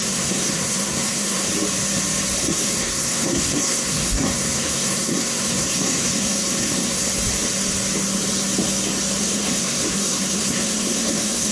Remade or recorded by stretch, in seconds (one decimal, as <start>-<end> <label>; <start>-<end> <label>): 0.0-1.5 remade; 1.5-2.4 recorded; 2.4-7.0 remade; 7.0-9.2 recorded; 9.2-11.5 remade